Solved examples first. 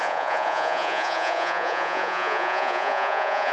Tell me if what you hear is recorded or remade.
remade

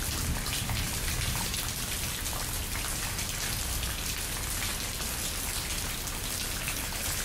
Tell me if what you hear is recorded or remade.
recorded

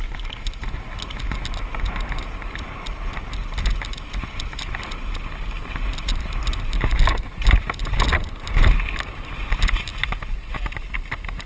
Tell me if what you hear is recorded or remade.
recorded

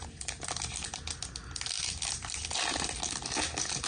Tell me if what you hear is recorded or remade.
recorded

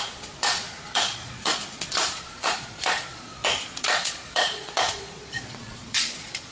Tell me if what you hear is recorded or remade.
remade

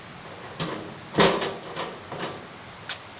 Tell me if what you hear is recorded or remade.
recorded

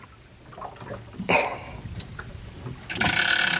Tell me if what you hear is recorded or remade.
recorded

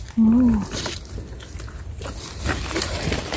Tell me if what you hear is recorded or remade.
recorded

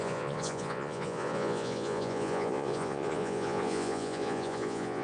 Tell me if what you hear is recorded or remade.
remade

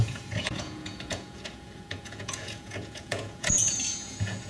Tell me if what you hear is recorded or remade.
remade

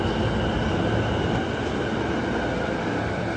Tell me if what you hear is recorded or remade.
recorded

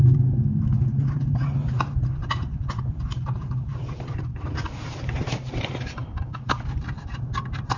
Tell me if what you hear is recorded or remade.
recorded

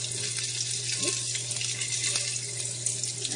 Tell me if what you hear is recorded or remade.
recorded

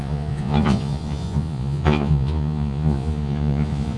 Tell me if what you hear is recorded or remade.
remade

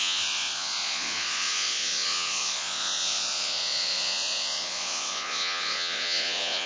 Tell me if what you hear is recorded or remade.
remade